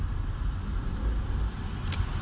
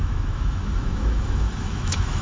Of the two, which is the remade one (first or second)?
second